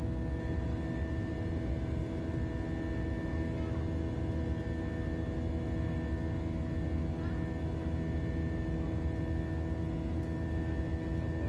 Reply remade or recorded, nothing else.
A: recorded